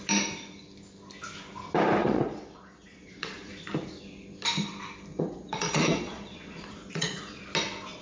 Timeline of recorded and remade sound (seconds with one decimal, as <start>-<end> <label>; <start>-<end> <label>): 0.0-2.0 recorded; 2.0-3.5 remade; 3.5-5.1 recorded; 5.1-7.4 remade; 7.4-8.0 recorded